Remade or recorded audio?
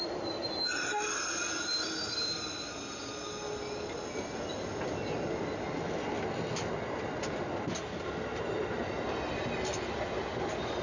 recorded